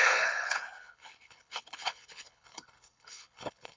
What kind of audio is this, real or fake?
fake